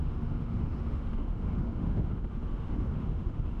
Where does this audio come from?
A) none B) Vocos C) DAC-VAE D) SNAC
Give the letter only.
C